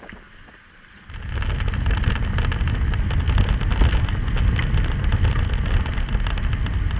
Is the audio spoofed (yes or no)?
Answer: no